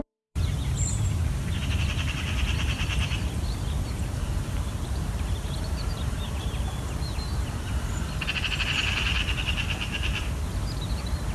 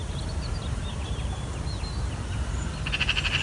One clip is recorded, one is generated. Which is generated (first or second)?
first